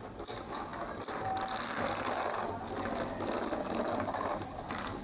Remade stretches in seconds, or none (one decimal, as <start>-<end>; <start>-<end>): none